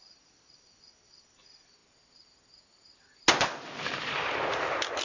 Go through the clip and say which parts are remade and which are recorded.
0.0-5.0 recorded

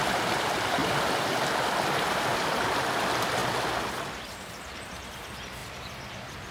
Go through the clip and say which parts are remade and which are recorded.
0.0-3.4 remade; 3.4-4.5 recorded; 4.5-6.5 remade

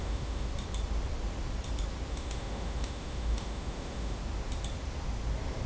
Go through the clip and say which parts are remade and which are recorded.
0.0-0.5 remade; 0.5-2.1 recorded; 2.1-4.2 remade; 4.2-5.7 recorded